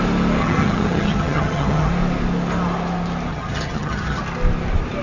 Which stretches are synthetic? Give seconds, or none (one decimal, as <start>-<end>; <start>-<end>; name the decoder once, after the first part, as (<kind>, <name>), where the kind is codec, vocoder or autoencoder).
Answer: 0.4-1.9 (vocoder, HiFi-GAN); 3.3-4.2